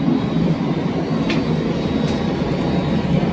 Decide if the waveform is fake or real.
real